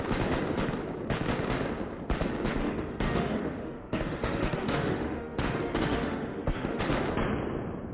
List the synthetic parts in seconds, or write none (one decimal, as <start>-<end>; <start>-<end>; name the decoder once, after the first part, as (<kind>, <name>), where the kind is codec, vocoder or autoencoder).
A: 2.6-6.8 (autoencoder, DAC-VAE)